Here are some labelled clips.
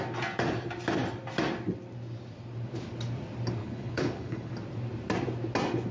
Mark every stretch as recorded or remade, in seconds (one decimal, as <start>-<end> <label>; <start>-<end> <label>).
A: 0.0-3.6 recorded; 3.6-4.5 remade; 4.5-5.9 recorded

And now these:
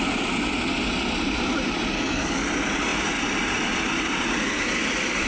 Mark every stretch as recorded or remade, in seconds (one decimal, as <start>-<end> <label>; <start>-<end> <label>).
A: 0.0-5.3 recorded

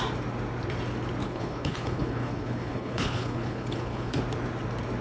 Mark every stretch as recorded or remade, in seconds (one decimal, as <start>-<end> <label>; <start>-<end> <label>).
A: 0.0-1.2 recorded; 1.2-4.2 remade; 4.2-5.0 recorded

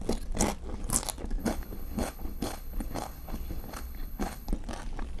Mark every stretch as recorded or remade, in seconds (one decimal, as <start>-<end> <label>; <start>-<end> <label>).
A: 0.0-1.4 recorded; 1.4-4.5 remade; 4.5-5.2 recorded